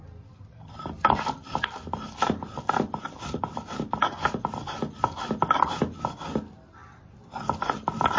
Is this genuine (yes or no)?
yes